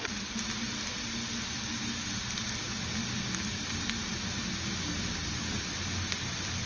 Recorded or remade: recorded